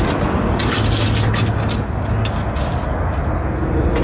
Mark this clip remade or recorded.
recorded